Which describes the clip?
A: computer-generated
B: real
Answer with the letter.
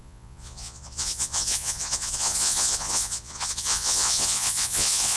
A